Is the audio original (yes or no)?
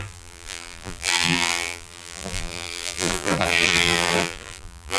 no